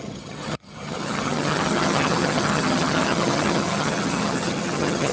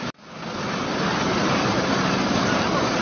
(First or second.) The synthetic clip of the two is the first